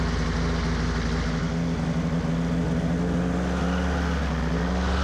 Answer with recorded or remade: recorded